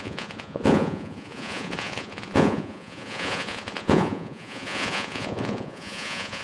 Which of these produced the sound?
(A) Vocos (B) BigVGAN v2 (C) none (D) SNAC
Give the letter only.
A